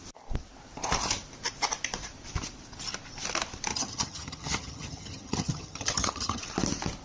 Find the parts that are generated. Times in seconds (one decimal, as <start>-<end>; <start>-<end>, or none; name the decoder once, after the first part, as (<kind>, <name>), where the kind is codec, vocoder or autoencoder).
3.7-6.4 (vocoder, HiFi-GAN)